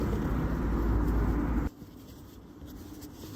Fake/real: real